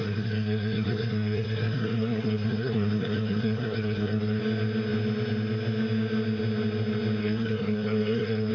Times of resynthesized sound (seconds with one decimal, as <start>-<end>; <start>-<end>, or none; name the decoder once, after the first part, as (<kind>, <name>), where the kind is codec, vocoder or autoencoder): 0.0-4.4 (codec, SNAC); 7.2-8.5